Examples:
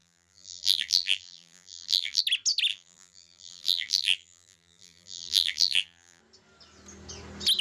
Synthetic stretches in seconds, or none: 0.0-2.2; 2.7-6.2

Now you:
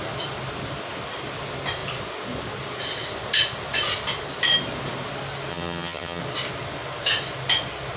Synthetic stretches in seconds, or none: 5.5-6.2

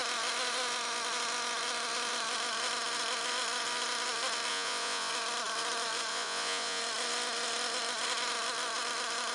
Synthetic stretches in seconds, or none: 4.5-5.1; 6.1-6.8

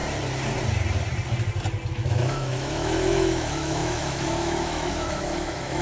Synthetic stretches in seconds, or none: 1.9-5.8

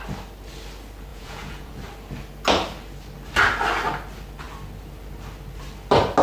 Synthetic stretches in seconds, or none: 1.1-1.7

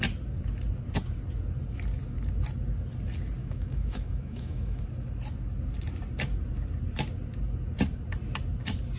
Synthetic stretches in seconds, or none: 3.4-4.8

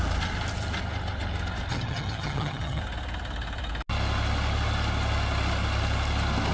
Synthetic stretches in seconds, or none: 1.7-2.8

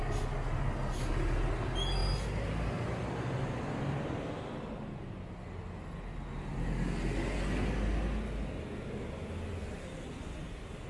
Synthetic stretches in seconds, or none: none